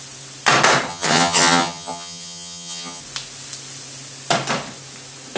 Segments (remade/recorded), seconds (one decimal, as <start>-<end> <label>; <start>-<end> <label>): 0.0-0.9 recorded; 0.9-3.0 remade; 3.0-5.4 recorded